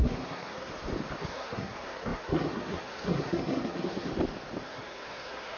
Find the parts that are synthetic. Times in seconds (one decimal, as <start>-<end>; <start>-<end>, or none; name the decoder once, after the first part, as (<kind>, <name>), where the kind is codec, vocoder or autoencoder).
0.0-0.7 (codec, SNAC); 1.2-4.1; 4.6-5.6